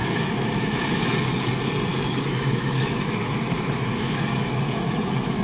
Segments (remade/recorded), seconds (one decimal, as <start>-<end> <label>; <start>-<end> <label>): 0.0-1.1 remade; 1.1-1.9 recorded; 1.9-5.4 remade